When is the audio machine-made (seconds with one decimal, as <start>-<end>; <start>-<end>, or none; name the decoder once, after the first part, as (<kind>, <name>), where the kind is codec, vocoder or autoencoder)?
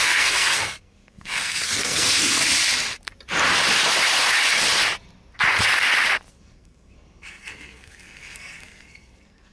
0.0-2.4 (codec, SNAC); 6.3-9.5